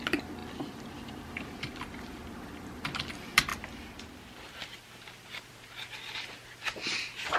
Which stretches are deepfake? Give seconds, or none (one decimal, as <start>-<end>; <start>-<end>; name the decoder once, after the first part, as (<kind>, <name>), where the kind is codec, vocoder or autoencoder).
none

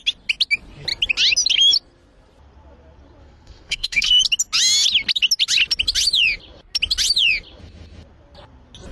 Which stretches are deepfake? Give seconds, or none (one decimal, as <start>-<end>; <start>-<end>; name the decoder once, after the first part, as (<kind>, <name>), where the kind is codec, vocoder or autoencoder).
3.2-4.2 (codec, SNAC)

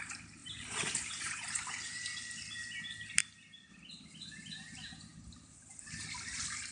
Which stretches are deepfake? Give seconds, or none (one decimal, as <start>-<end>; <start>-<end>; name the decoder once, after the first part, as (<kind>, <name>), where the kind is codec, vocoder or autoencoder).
0.4-1.7 (vocoder, BigVGAN v2)

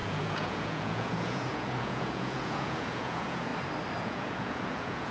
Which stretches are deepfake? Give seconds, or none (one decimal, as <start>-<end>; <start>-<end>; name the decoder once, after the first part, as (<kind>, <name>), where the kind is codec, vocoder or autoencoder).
0.0-3.5 (vocoder, Vocos); 4.0-5.1

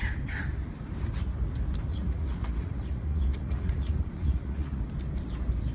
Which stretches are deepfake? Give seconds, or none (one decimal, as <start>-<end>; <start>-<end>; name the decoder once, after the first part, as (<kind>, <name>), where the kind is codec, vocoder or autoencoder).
1.9-4.8 (vocoder, Vocos)

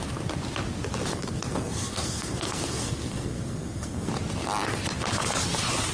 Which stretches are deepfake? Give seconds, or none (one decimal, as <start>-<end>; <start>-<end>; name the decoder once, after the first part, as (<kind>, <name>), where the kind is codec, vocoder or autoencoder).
1.1-4.1 (codec, SNAC)

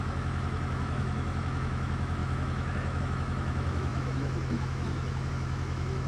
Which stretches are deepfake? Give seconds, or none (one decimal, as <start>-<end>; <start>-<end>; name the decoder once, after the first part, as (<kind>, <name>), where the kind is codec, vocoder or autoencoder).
0.0-6.1 (autoencoder, DAC-VAE)